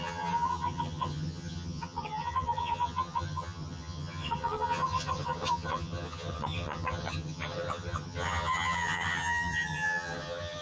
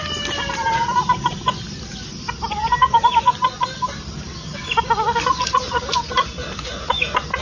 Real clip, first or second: second